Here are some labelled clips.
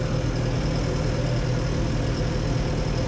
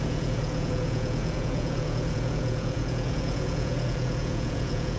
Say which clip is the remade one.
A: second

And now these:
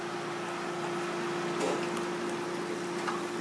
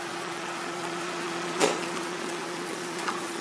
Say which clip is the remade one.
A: second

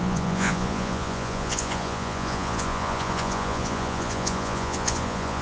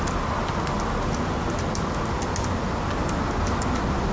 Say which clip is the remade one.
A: first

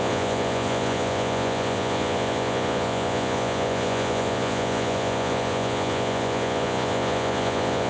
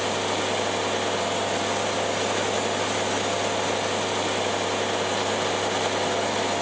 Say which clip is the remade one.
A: first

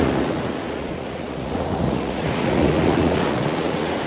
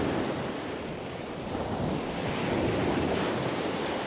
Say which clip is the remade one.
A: first